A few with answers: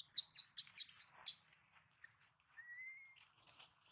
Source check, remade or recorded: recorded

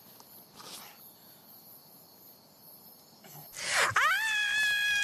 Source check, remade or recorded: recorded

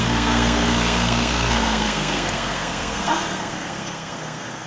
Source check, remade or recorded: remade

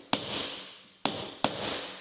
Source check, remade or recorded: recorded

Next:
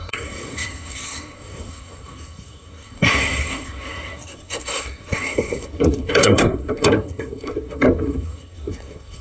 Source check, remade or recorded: remade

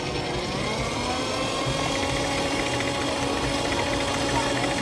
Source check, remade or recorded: recorded